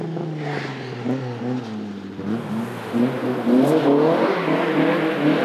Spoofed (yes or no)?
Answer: no